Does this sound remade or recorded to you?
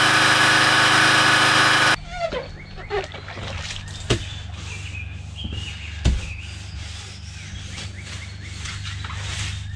recorded